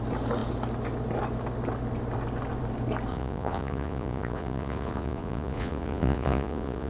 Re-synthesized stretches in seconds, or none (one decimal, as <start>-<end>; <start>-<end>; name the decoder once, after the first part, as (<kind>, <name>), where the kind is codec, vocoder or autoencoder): 3.1-6.9 (vocoder, Vocos)